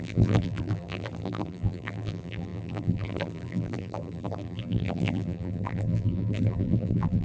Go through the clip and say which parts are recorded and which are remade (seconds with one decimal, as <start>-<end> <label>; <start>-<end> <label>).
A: 0.0-7.2 remade